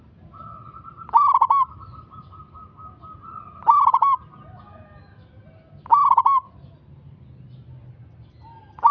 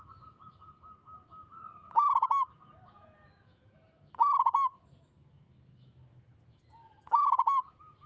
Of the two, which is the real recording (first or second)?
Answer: first